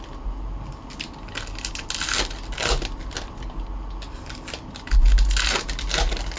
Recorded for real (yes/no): yes